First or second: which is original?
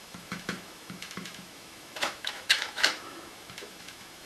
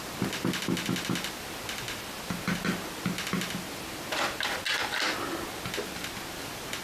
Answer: second